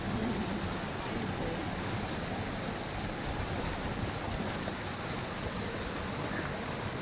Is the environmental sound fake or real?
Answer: real